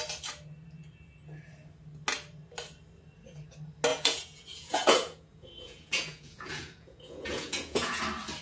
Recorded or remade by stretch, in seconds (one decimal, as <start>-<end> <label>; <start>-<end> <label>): 0.0-3.9 recorded; 3.9-8.0 remade; 8.0-8.4 recorded

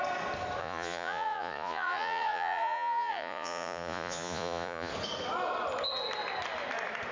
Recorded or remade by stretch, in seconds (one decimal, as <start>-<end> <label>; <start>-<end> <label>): 0.0-0.6 recorded; 0.6-4.9 remade; 4.9-7.1 recorded

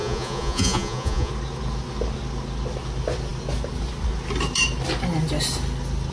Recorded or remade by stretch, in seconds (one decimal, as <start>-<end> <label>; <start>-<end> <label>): 0.0-1.3 remade; 1.3-6.1 recorded

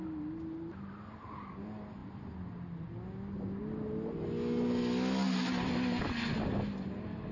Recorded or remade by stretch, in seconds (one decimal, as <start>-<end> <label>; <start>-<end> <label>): 0.0-7.3 recorded

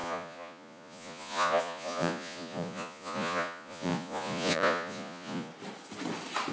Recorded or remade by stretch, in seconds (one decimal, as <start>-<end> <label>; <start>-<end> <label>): 0.0-5.5 remade; 5.5-6.5 recorded

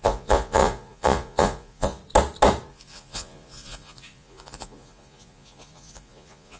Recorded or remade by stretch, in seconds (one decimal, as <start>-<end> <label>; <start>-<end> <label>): 0.0-2.0 remade; 2.0-2.7 recorded; 2.7-6.6 remade

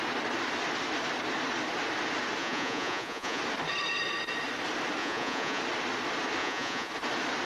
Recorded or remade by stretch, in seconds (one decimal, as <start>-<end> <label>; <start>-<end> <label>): 0.0-2.4 recorded; 2.4-3.4 remade; 3.4-5.0 recorded; 5.0-5.6 remade; 5.6-6.4 recorded; 6.4-6.9 remade; 6.9-7.5 recorded

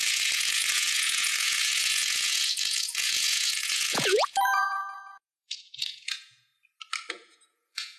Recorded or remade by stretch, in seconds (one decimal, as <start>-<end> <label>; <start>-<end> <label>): 0.0-6.5 remade; 6.5-7.1 recorded; 7.1-8.0 remade